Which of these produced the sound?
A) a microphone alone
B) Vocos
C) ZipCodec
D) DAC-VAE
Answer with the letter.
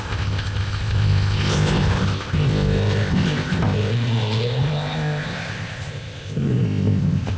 C